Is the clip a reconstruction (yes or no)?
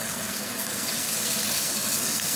yes